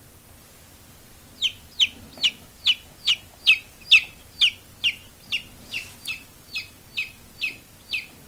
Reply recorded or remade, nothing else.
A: recorded